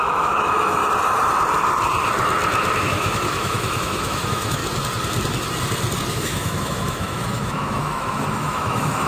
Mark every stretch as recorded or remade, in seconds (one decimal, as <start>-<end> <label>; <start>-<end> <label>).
0.0-0.8 remade; 0.8-2.8 recorded; 2.8-4.6 remade; 4.6-6.1 recorded; 6.1-9.1 remade